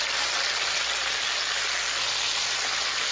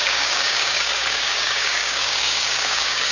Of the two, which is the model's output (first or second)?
second